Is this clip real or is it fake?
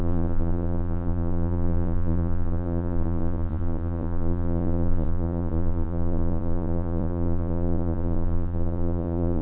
fake